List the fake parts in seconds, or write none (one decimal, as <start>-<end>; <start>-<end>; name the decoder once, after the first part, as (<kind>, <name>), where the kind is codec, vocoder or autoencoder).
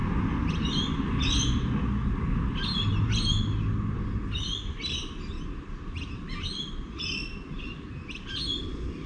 none